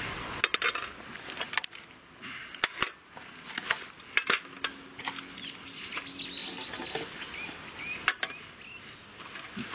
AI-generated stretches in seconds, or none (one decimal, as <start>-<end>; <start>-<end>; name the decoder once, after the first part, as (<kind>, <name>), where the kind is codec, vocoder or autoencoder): none